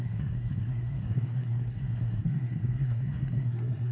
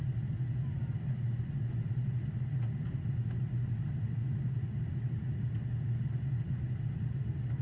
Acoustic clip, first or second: second